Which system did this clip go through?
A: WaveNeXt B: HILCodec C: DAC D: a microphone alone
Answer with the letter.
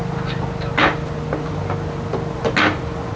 D